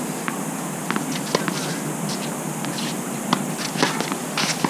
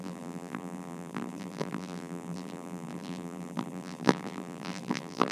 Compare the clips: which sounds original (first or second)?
first